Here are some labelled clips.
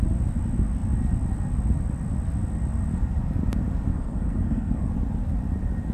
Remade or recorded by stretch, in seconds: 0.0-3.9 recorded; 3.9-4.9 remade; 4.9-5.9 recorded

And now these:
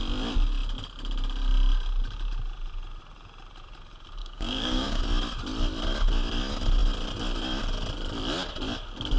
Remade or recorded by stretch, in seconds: 0.0-4.2 recorded; 4.2-5.0 remade; 5.0-9.2 recorded